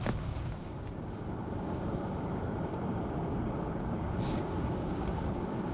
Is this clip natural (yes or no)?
no